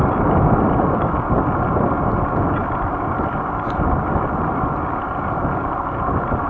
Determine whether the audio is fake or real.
real